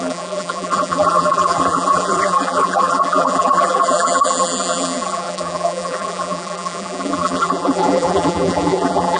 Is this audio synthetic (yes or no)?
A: yes